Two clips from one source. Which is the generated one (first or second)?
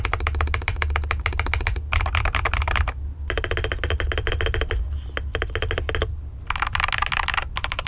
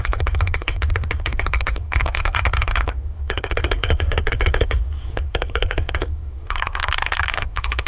second